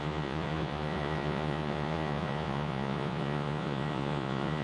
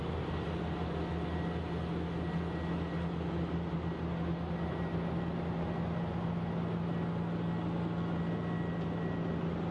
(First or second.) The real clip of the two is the second